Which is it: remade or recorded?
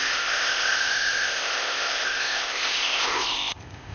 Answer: remade